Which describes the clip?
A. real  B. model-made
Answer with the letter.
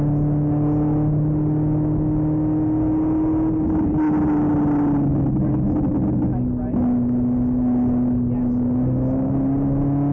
A